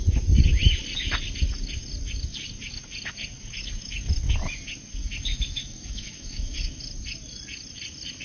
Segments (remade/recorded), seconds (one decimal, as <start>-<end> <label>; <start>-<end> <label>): 0.0-5.0 recorded; 5.0-6.8 remade; 6.8-8.2 recorded